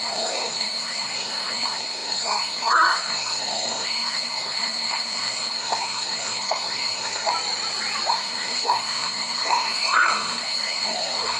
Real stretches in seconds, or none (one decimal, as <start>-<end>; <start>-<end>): 7.3-8.1